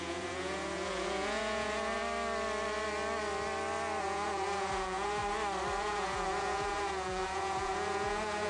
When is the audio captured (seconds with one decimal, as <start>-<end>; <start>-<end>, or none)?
2.0-4.0; 5.2-5.8